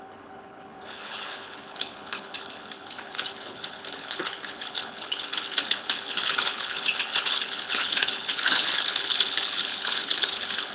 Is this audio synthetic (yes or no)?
yes